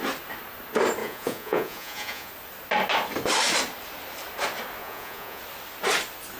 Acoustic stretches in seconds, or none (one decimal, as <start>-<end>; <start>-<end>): 0.0-1.0; 2.3-4.8; 5.4-6.4